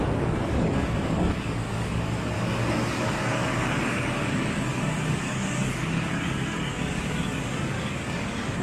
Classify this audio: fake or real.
fake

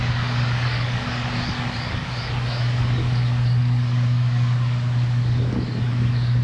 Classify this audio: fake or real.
fake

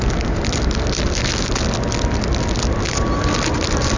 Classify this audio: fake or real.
real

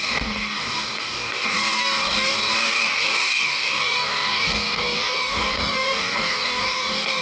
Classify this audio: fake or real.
fake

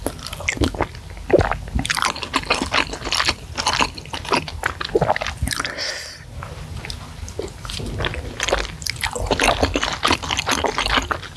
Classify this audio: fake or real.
real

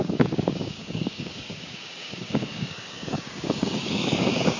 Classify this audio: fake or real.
fake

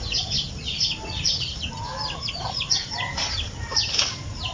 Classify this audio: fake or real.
real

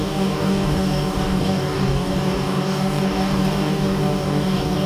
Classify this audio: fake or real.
fake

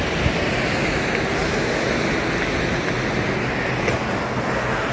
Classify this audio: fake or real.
real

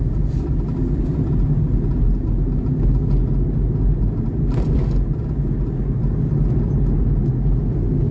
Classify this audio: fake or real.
real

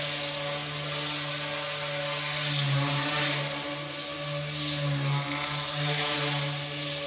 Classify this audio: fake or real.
real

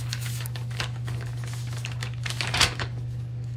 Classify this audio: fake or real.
fake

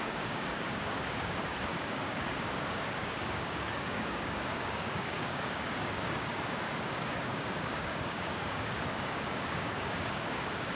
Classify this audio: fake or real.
fake